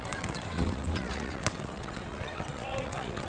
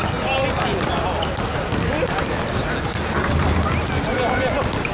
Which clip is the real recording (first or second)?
second